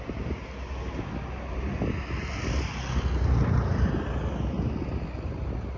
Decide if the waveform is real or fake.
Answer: real